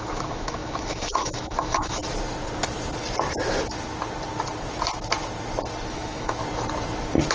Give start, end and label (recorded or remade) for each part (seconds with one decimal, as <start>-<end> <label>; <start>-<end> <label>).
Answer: 0.0-2.0 remade; 2.0-5.9 recorded; 5.9-6.4 remade; 6.4-7.3 recorded